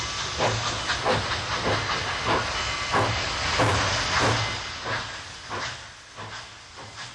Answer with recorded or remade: recorded